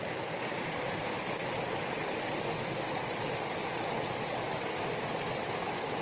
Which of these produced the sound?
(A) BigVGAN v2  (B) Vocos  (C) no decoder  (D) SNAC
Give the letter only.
C